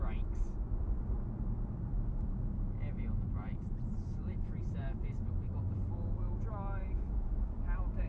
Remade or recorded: remade